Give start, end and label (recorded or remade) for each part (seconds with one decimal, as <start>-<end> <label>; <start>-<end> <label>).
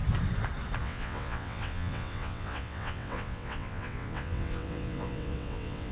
0.0-0.8 recorded; 0.8-5.9 remade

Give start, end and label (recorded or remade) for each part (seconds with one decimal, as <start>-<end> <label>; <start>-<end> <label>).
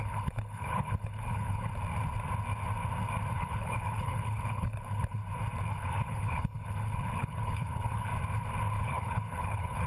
0.0-1.7 remade; 1.7-3.3 recorded; 3.3-5.2 remade; 5.2-5.7 recorded; 5.7-8.1 remade; 8.1-8.7 recorded; 8.7-9.9 remade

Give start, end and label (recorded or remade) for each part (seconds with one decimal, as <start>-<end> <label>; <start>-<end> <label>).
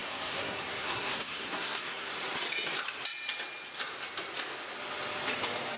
0.0-2.1 remade; 2.1-5.8 recorded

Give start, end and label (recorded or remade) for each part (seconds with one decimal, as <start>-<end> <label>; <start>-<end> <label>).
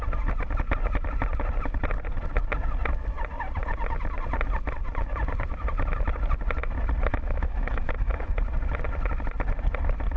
0.0-7.1 recorded; 7.1-8.4 remade; 8.4-10.2 recorded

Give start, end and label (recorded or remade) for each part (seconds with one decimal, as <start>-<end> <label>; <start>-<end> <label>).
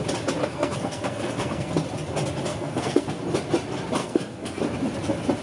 0.0-0.4 recorded; 0.4-1.7 remade; 1.7-2.5 recorded; 2.5-3.2 remade; 3.2-4.0 recorded; 4.0-4.6 remade; 4.6-5.4 recorded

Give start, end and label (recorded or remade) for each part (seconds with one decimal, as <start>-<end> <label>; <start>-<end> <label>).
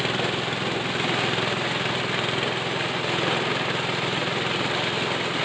0.0-5.4 recorded